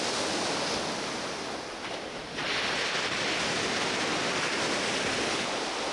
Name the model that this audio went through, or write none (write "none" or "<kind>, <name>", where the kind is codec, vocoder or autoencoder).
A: none